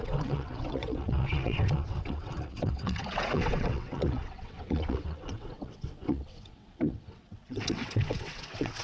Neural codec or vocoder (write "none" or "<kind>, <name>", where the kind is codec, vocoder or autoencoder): vocoder, WaveNeXt